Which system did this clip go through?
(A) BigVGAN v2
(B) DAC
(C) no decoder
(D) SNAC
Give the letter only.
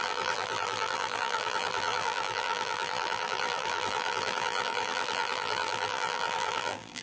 A